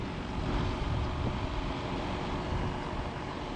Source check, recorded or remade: recorded